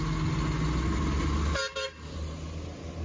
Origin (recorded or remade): recorded